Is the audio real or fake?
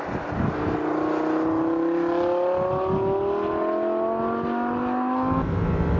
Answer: real